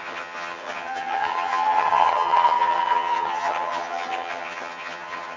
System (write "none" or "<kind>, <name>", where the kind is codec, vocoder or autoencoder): vocoder, HiFi-GAN